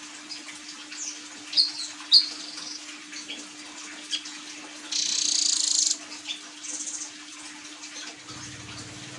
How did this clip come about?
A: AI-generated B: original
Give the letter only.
B